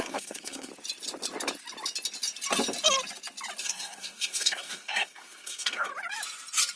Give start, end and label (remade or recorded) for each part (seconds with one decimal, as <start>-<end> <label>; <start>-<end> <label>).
0.0-0.7 remade; 0.7-3.6 recorded; 3.6-5.9 remade; 5.9-6.8 recorded